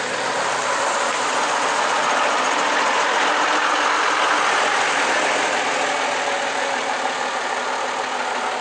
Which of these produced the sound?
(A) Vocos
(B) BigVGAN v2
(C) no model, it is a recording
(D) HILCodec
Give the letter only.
C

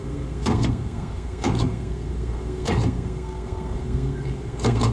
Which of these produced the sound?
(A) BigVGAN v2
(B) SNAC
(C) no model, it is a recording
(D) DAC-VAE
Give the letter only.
B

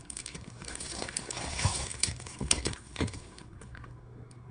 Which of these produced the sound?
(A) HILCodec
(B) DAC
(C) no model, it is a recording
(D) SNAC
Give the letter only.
D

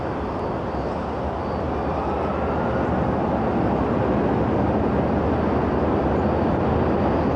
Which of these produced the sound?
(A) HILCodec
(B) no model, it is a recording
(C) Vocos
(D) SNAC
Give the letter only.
B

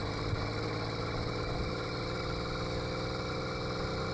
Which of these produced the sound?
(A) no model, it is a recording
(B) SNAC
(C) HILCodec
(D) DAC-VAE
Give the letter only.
A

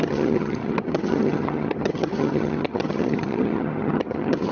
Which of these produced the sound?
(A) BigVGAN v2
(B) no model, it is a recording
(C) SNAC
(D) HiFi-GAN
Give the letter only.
D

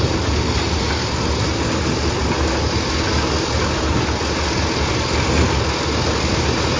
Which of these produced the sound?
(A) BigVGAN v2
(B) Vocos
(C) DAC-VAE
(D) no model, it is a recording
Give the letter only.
D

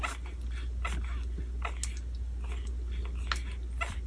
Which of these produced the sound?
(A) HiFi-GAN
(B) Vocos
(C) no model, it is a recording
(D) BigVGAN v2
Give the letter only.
C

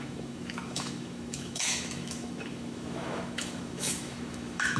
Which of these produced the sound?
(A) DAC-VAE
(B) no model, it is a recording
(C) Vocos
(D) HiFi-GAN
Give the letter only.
A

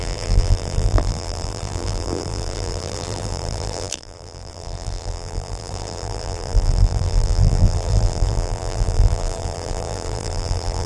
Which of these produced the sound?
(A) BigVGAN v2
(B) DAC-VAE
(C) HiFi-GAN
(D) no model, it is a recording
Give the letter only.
A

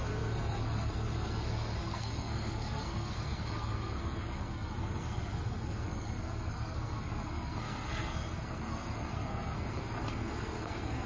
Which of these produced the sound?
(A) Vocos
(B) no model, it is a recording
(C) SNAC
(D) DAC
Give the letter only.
C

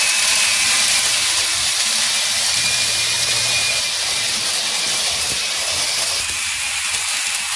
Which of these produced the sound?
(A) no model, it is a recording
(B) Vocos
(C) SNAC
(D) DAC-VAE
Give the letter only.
A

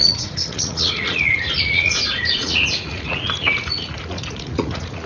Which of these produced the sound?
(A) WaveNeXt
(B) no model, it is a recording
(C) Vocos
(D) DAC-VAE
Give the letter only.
C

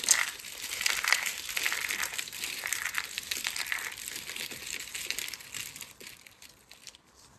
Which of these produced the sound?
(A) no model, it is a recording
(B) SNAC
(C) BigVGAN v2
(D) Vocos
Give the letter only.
C